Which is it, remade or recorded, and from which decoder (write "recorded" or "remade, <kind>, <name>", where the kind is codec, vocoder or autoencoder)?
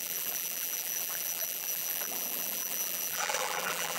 remade, vocoder, BigVGAN v2